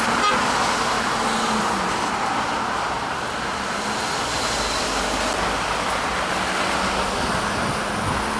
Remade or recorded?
recorded